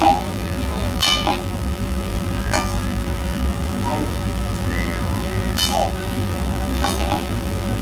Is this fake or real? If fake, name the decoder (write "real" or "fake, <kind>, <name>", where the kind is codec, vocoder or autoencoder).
fake, vocoder, BigVGAN v2